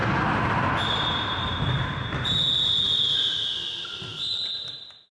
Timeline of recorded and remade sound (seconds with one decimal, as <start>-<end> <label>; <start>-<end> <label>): 0.0-5.1 recorded